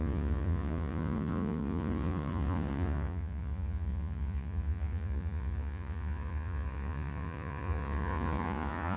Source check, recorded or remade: remade